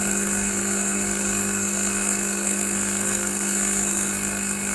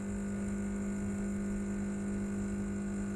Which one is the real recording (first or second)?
second